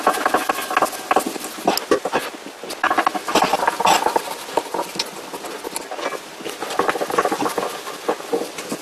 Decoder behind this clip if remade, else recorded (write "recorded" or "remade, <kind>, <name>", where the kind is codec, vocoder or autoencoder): recorded